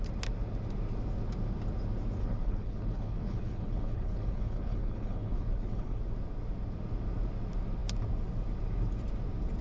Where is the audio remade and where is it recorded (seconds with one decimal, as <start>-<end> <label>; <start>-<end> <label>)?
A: 0.0-2.2 recorded; 2.2-6.0 remade; 6.0-9.6 recorded